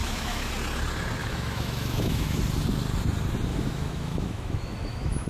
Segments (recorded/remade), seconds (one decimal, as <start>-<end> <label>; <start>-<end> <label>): 0.0-0.5 remade; 0.5-1.2 recorded; 1.2-2.4 remade; 2.4-3.5 recorded; 3.5-5.3 remade